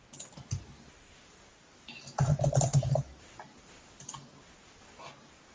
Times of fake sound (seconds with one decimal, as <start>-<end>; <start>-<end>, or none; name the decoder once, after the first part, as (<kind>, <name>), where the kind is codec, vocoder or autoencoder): none